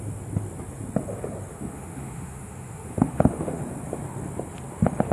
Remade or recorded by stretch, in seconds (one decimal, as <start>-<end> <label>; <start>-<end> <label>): 0.0-1.5 recorded; 1.5-3.6 remade; 3.6-5.1 recorded